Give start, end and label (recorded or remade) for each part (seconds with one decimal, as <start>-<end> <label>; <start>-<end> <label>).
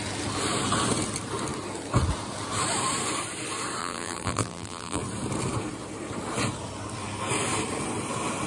0.0-3.8 recorded; 3.8-5.0 remade; 5.0-8.5 recorded